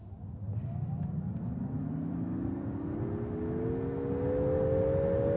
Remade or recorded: recorded